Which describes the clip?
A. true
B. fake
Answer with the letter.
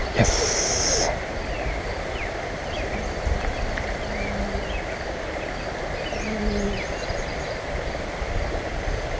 A